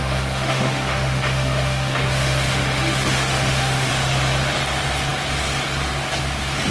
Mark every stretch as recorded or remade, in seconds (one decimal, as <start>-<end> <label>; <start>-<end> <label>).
0.0-3.9 remade; 3.9-6.7 recorded